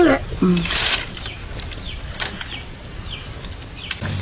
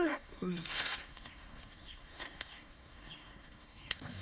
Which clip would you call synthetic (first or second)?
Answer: second